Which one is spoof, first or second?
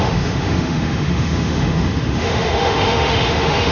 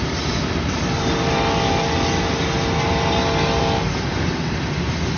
first